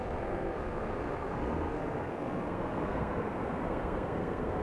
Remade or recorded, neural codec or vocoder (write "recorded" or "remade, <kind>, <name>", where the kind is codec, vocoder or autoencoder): remade, codec, SNAC